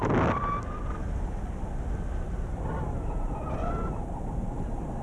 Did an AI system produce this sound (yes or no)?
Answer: no